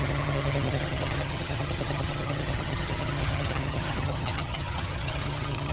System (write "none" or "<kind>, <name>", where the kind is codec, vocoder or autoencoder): vocoder, HiFi-GAN